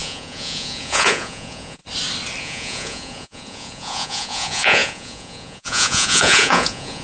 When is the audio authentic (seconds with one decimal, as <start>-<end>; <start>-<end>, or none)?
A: 1.8-2.4